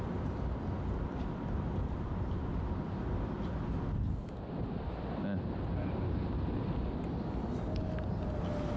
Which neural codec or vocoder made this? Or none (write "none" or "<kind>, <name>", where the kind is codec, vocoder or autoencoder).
none